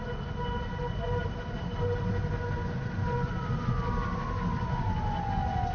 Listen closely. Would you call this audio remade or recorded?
recorded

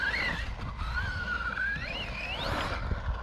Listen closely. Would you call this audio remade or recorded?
recorded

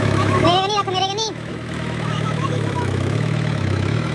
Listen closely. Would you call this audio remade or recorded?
remade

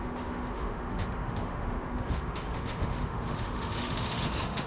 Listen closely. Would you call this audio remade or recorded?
remade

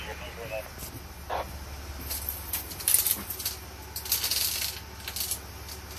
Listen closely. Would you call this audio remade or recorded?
recorded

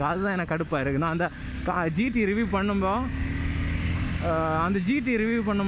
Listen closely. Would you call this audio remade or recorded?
recorded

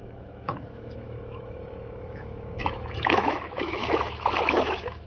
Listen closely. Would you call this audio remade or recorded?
remade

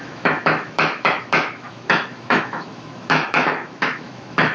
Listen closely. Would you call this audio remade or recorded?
remade